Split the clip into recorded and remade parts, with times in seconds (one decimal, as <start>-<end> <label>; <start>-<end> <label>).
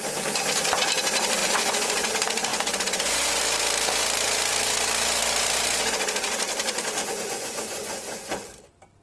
0.0-1.4 recorded; 1.4-2.1 remade; 2.1-2.5 recorded; 2.5-3.4 remade; 3.4-7.0 recorded; 7.0-8.3 remade; 8.3-9.0 recorded